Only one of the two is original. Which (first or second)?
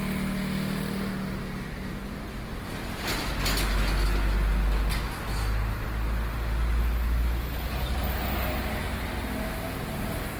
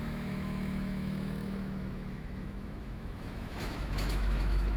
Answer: first